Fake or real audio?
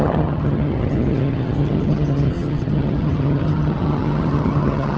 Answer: fake